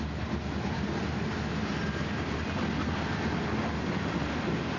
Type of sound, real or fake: real